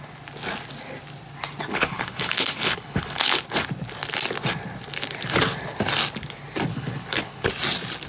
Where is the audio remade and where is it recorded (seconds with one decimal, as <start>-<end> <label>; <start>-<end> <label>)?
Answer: 0.0-1.7 recorded; 1.7-3.4 remade; 3.4-6.7 recorded; 6.7-7.5 remade; 7.5-8.1 recorded